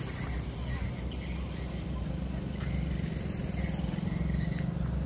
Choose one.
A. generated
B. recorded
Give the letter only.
B